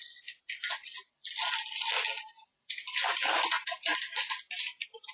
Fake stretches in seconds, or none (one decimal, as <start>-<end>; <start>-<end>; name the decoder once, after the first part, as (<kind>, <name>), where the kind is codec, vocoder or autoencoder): 2.2-5.1 (vocoder, BigVGAN v2)